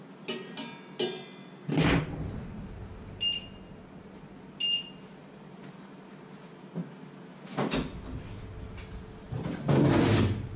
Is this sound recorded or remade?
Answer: recorded